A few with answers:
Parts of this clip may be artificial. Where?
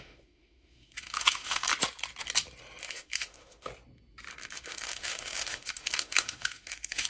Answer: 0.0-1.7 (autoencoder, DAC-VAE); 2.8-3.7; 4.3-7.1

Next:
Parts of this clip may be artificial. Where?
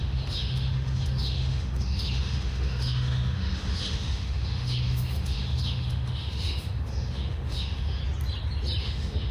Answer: 0.0-8.0 (autoencoder, DAC-VAE); 8.8-9.3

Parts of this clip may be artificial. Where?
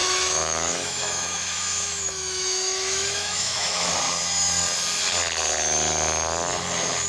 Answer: 0.0-3.9 (autoencoder, DAC-VAE)